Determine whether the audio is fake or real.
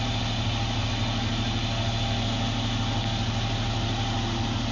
real